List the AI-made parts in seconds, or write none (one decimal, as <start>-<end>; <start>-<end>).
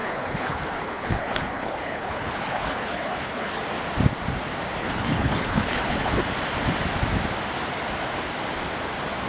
0.0-3.6; 4.8-6.2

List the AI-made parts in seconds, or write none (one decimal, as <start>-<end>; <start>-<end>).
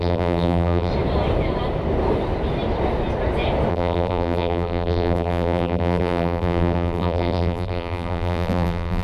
0.0-0.9; 3.7-9.0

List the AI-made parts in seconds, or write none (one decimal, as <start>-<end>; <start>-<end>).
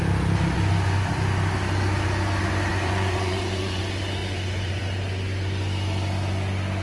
2.7-3.8; 4.2-4.8